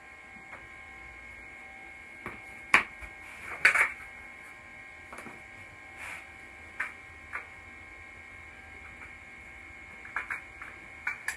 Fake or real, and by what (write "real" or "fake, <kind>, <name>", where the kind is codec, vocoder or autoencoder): real